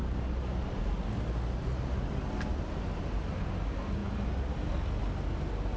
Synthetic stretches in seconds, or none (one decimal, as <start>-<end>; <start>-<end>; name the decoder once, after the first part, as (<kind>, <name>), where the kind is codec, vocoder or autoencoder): none